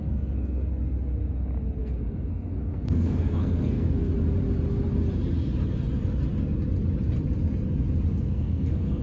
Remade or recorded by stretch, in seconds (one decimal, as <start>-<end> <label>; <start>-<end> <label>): 0.0-0.7 remade; 0.7-1.8 recorded; 1.8-4.1 remade; 4.1-8.1 recorded; 8.1-9.0 remade